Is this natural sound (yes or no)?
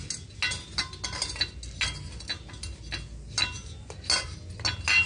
yes